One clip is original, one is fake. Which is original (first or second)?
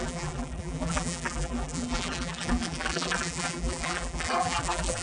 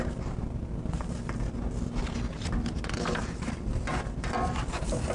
second